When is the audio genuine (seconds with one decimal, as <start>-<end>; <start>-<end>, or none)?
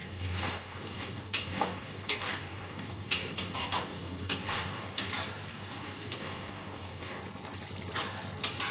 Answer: 5.1-5.5; 7.2-8.7